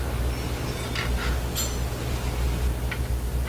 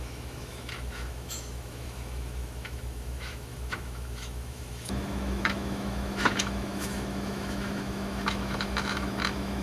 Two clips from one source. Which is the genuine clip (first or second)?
first